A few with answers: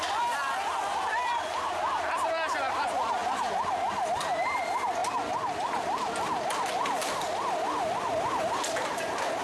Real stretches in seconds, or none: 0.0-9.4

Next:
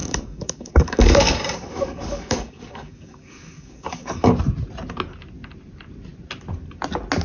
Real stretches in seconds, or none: 4.3-7.2

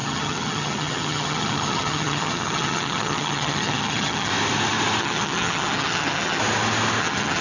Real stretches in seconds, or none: 4.3-5.0; 6.4-7.0

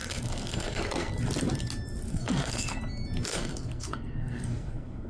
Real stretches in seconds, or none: 1.1-2.1; 2.8-3.3

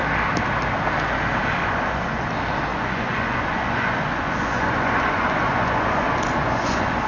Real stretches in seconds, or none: 0.0-1.6; 2.3-2.7

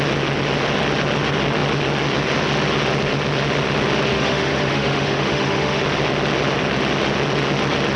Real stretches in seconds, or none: 0.0-4.1; 5.8-8.0

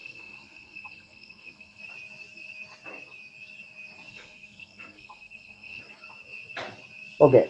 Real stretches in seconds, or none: 1.8-4.1; 5.8-7.5